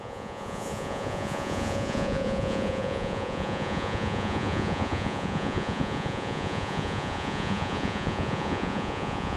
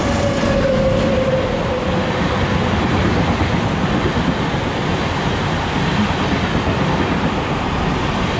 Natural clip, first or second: second